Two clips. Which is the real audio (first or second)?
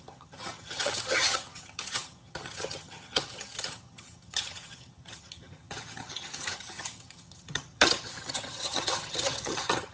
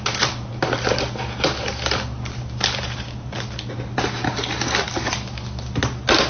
second